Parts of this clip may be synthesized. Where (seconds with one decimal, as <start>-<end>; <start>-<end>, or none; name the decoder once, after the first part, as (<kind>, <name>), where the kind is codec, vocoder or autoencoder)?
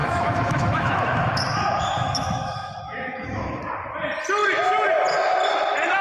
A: 0.0-3.6 (autoencoder, DAC-VAE)